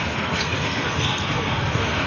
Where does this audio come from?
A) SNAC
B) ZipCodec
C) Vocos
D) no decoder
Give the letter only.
A